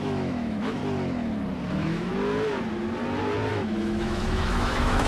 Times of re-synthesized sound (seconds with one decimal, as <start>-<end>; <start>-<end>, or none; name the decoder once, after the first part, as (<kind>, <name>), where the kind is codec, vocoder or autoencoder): 0.0-0.8 (autoencoder, DAC-VAE); 1.7-2.1; 3.5-5.1